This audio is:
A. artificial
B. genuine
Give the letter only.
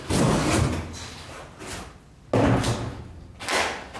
B